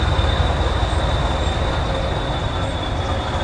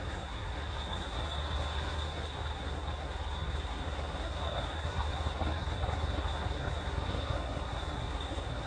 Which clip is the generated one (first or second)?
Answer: second